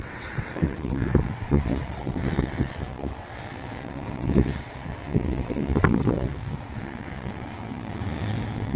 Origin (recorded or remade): remade